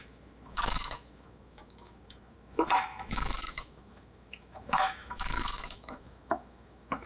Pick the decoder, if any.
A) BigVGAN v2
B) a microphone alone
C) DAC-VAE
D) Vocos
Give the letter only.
C